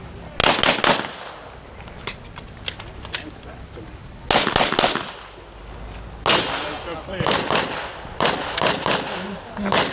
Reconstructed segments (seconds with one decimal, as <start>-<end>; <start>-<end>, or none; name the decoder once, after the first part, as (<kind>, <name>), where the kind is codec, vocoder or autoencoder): none